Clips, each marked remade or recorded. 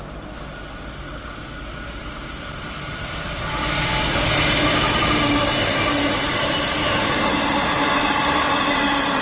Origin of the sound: recorded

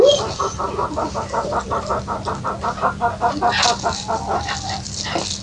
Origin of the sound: recorded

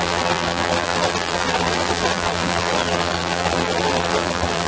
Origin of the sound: remade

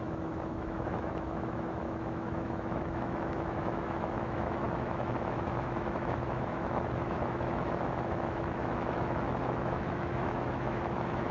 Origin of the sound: remade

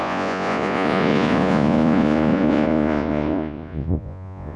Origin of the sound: remade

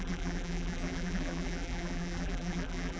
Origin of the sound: remade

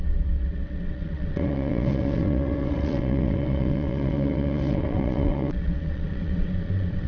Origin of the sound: remade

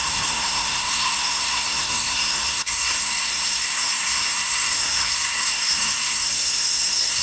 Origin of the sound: remade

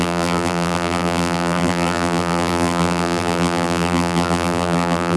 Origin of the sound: remade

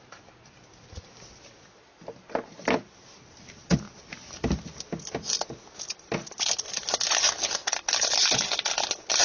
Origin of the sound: recorded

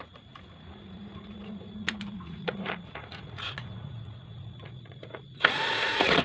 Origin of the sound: remade